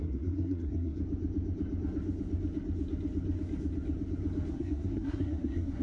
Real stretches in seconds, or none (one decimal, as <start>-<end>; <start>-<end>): 1.0-4.5